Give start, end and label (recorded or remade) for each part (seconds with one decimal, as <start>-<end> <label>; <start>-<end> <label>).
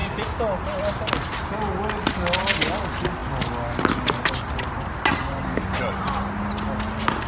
0.0-7.3 recorded